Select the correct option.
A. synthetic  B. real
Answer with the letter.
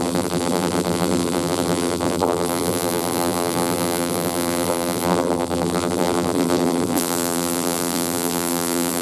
A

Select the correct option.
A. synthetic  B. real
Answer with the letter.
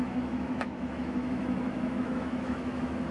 A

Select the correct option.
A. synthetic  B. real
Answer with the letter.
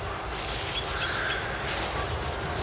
B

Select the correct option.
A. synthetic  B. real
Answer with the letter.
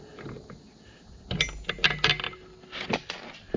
B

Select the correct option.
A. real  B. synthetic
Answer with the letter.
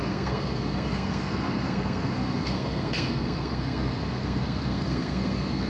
B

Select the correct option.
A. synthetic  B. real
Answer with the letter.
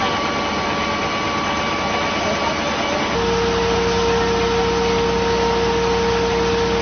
B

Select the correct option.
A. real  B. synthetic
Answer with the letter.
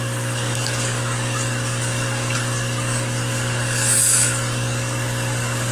B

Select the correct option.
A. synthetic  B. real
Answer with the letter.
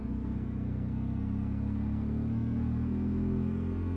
A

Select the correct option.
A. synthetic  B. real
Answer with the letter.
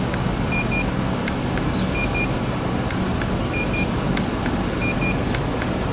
B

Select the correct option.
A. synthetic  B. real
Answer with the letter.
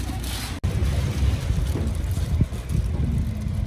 B